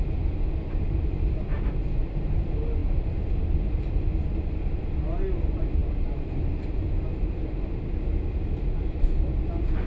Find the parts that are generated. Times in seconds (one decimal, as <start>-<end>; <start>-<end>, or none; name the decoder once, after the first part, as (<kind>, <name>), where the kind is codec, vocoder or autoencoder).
none